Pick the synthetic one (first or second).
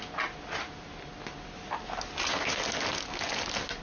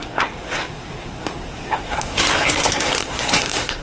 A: second